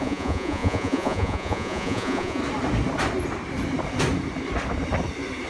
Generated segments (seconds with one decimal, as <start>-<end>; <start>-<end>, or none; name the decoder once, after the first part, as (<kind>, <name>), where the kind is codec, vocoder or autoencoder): 0.0-2.4 (vocoder, Vocos)